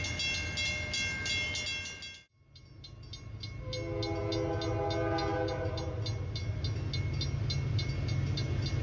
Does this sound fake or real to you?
real